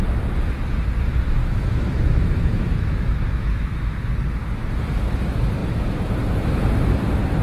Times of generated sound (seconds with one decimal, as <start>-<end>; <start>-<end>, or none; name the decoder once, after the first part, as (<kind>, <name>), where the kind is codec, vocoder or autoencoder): 1.4-4.1 (autoencoder, DAC-VAE)